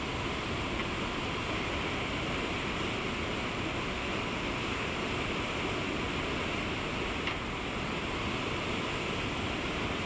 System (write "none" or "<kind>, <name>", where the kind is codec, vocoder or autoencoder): none